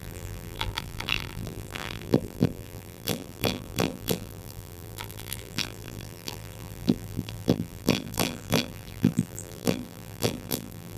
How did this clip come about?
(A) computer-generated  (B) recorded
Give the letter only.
A